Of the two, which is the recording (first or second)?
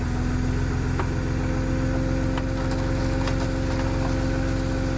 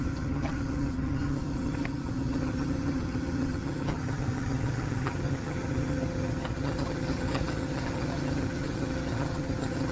first